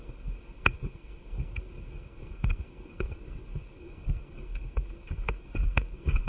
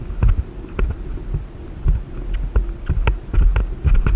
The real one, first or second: second